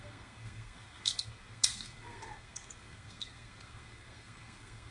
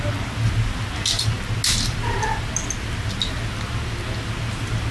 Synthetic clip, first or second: first